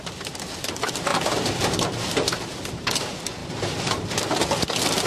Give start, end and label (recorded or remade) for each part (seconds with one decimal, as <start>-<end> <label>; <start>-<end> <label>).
0.0-1.1 recorded; 1.1-2.9 remade; 2.9-3.4 recorded; 3.4-4.2 remade; 4.2-5.1 recorded